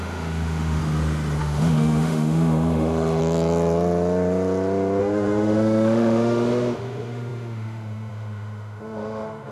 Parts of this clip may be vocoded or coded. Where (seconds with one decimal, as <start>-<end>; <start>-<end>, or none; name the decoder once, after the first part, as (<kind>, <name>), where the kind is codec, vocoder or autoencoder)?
0.0-0.8 (autoencoder, DAC-VAE); 1.4-3.2; 5.0-9.5